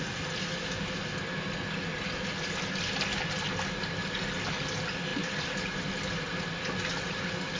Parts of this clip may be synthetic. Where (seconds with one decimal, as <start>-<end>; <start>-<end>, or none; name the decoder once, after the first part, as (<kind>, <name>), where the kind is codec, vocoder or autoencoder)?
none